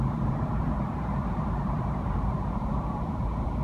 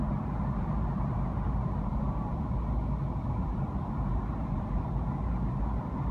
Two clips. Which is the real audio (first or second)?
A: second